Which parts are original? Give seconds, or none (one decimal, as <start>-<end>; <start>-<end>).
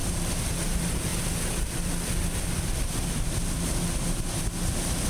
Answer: 0.0-5.1